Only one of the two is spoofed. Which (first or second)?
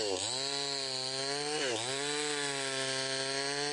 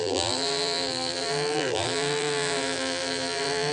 second